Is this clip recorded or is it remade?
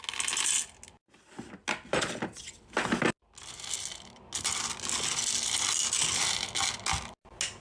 recorded